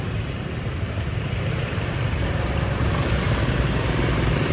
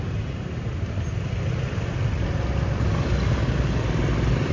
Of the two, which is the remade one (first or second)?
first